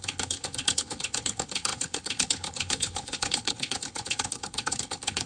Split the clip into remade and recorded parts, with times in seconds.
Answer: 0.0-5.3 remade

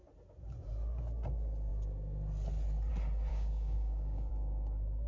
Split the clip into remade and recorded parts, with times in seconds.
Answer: 0.0-3.3 recorded; 3.3-4.3 remade; 4.3-5.1 recorded

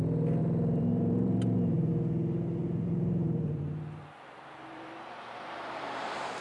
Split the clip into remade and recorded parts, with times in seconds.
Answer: 0.0-0.4 recorded; 0.4-1.9 remade; 1.9-2.6 recorded; 2.6-6.4 remade

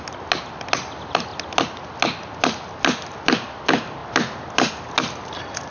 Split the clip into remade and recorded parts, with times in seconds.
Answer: 0.0-5.7 recorded

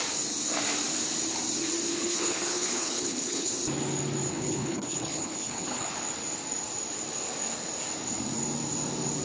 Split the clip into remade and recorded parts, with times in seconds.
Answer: 0.0-1.9 recorded; 1.9-3.5 remade; 3.5-4.3 recorded; 4.3-5.9 remade; 5.9-9.2 recorded

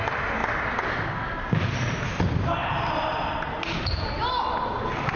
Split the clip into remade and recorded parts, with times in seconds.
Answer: 0.0-5.2 recorded

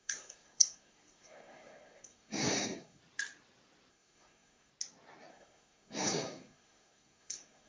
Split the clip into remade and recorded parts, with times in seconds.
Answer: 0.0-3.0 remade; 3.0-3.9 recorded; 3.9-4.7 remade; 4.7-5.3 recorded; 5.3-7.7 remade